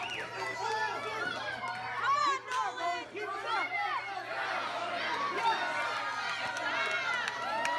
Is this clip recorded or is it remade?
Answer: recorded